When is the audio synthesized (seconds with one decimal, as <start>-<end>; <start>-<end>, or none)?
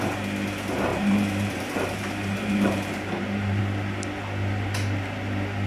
0.9-3.6